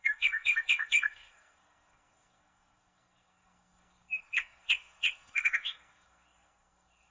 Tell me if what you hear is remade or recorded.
remade